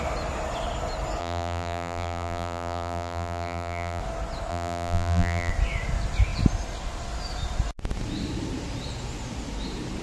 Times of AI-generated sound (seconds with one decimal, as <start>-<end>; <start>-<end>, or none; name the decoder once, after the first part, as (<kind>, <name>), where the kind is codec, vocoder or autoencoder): 1.2-4.0 (vocoder, BigVGAN v2); 4.5-5.5